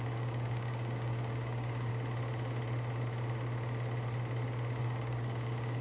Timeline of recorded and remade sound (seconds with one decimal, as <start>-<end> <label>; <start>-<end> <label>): 0.0-1.9 remade; 1.9-4.8 recorded; 4.8-5.8 remade